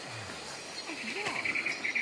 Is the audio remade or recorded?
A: recorded